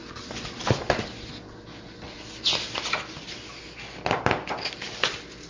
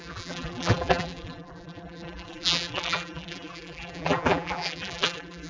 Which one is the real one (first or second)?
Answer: first